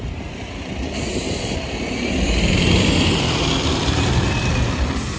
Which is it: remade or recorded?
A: remade